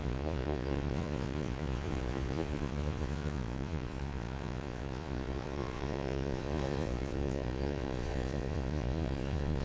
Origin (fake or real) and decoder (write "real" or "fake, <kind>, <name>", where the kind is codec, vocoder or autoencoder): fake, vocoder, Vocos